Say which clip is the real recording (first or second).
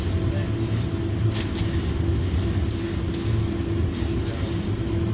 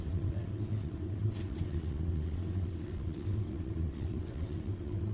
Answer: first